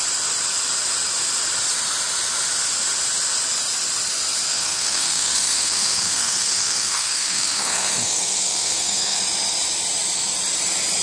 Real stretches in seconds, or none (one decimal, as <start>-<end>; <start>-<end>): 0.0-4.5; 9.2-11.0